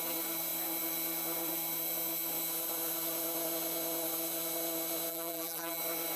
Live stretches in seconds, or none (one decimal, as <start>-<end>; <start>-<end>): 0.0-5.1; 5.8-6.2